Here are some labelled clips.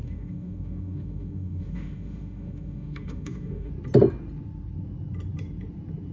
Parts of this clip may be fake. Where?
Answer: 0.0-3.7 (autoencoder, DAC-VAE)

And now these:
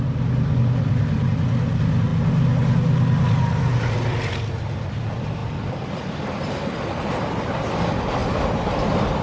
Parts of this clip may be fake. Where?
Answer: none

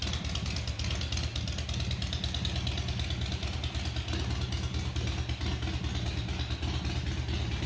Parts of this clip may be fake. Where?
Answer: none

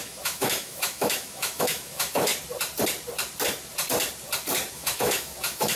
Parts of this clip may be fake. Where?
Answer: 0.0-2.3 (autoencoder, DAC-VAE); 4.7-5.8

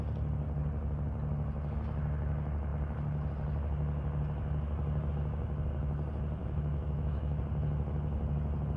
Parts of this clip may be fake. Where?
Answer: 6.4-7.4 (autoencoder, DAC-VAE)